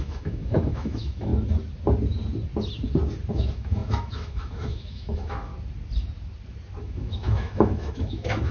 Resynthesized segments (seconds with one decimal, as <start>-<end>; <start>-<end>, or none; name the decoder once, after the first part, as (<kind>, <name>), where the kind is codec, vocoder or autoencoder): 0.0-1.3 (autoencoder, DAC-VAE); 3.3-5.5; 6.8-8.5